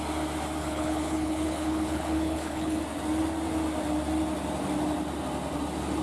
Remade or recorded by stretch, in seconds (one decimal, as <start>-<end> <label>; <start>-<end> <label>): 0.0-0.6 recorded; 0.6-2.8 remade; 2.8-6.0 recorded

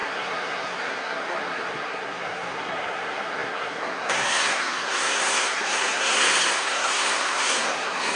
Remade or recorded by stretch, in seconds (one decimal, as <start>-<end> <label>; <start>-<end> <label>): 0.0-8.2 remade

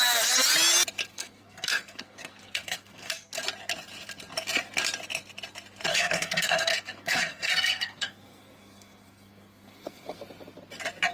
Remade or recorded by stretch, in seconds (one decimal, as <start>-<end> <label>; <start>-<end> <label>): 0.0-1.1 recorded; 1.1-3.4 remade; 3.4-5.9 recorded; 5.9-10.2 remade; 10.2-11.1 recorded

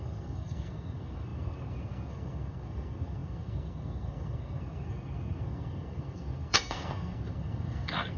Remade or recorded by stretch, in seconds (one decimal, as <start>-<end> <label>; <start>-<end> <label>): 0.0-8.2 remade

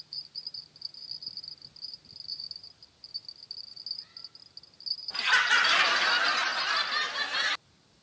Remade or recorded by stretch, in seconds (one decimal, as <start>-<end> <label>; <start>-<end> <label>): 0.0-8.0 recorded

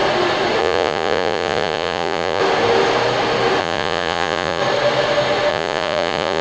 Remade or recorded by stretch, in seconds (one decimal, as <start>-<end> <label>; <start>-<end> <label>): 0.0-0.6 recorded; 0.6-2.4 remade; 2.4-3.6 recorded; 3.6-4.6 remade; 4.6-5.5 recorded; 5.5-6.4 remade